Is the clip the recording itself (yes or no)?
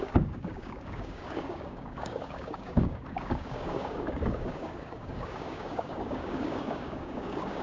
no